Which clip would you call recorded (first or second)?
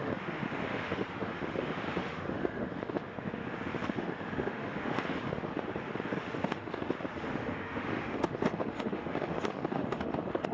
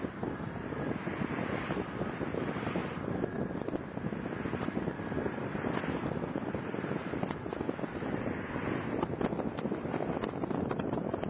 second